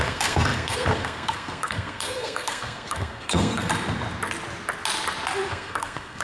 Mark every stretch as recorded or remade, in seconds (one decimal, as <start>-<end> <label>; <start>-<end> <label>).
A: 0.0-3.7 remade; 3.7-5.5 recorded; 5.5-6.2 remade